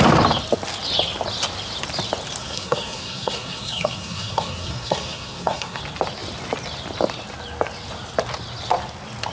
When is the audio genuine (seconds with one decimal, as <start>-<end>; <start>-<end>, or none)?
0.0-2.4; 5.8-9.3

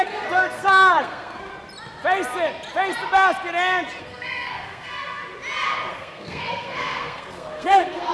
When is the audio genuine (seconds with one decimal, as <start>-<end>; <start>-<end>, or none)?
1.5-4.0; 5.2-5.9